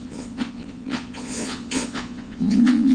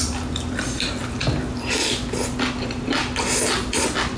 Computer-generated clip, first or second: first